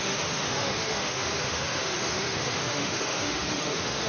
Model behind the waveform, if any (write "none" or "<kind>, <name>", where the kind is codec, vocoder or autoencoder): autoencoder, DAC-VAE